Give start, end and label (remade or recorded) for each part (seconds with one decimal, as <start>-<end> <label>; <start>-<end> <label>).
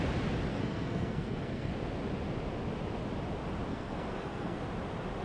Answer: 0.0-0.5 recorded; 0.5-1.7 remade; 1.7-3.7 recorded; 3.7-4.6 remade; 4.6-5.2 recorded